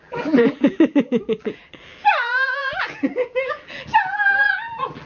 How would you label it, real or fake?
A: fake